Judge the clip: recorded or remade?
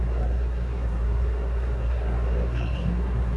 remade